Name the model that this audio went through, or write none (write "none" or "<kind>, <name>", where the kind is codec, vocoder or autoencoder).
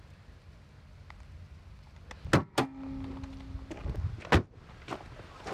none